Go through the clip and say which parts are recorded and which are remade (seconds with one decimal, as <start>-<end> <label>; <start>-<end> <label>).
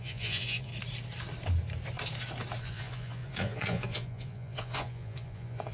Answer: 0.0-0.7 remade; 0.7-2.6 recorded; 2.6-5.7 remade